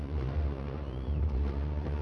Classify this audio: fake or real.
fake